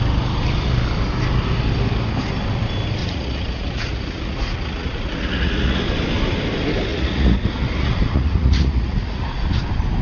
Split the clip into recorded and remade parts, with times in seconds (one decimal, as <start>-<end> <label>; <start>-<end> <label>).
0.0-3.0 recorded; 3.0-5.8 remade; 5.8-6.9 recorded; 6.9-9.5 remade; 9.5-10.0 recorded